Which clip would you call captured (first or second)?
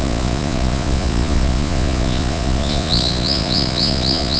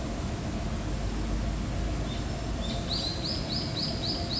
second